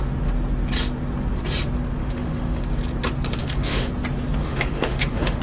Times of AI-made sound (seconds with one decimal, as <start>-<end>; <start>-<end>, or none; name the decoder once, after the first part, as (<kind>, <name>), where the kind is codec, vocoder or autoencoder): 2.0-2.6 (autoencoder, DAC-VAE); 3.4-3.9; 4.4-5.4